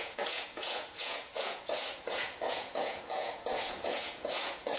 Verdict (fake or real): fake